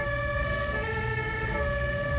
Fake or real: fake